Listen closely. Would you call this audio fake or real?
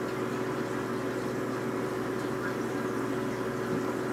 real